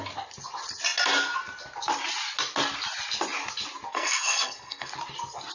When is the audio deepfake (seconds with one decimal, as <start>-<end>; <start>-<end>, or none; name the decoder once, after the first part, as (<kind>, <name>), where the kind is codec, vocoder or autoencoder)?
3.9-4.9 (codec, SNAC)